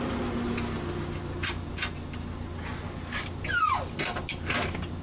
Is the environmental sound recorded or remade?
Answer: recorded